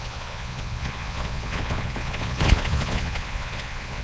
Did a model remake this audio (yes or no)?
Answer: yes